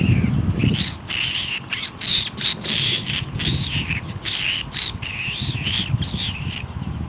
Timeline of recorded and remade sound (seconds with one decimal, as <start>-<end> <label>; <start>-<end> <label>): 0.0-7.1 recorded